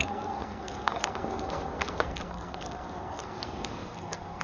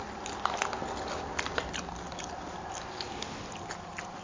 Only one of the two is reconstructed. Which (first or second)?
first